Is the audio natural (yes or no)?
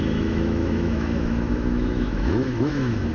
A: no